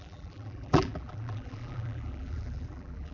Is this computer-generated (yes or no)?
yes